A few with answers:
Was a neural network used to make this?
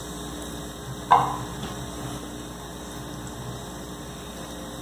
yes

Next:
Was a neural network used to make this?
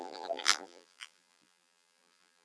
yes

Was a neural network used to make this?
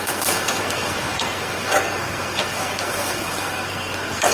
yes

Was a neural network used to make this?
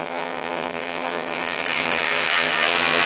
yes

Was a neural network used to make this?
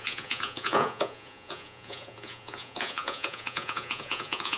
yes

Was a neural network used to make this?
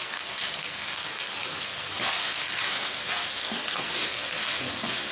yes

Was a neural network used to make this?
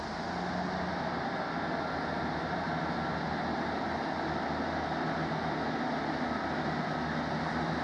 no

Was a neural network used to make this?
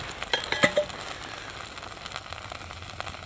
no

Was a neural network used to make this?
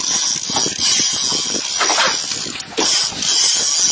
no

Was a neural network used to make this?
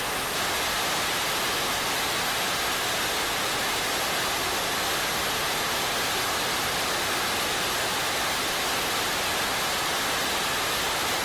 no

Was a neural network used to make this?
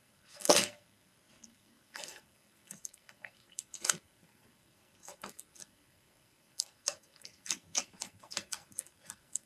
yes